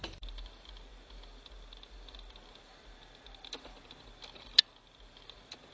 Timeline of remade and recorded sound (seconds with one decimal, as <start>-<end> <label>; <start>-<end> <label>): 0.0-5.7 recorded